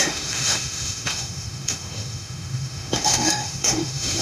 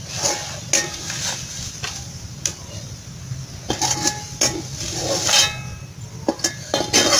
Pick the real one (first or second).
second